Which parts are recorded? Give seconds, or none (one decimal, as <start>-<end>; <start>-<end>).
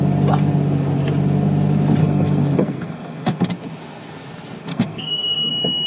0.0-2.0; 3.5-4.7; 5.5-5.9